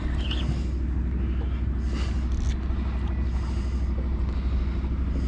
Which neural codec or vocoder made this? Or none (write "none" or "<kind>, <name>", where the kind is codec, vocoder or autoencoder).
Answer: none